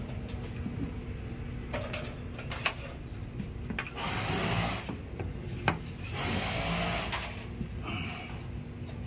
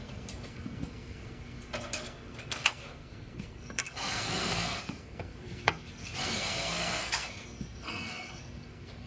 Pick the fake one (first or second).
second